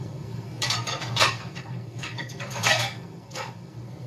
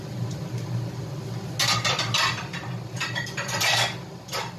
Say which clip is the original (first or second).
second